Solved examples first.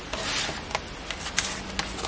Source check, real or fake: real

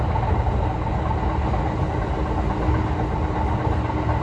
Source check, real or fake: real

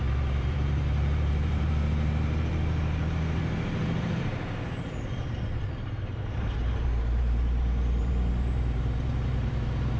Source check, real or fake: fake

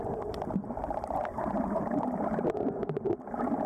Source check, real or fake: fake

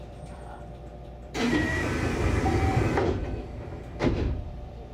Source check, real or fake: fake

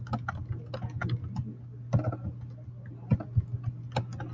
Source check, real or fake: real